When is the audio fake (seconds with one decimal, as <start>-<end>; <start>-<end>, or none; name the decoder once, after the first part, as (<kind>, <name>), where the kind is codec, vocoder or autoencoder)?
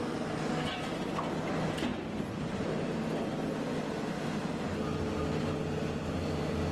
none